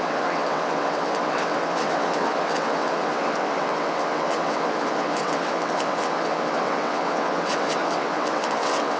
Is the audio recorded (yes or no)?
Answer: no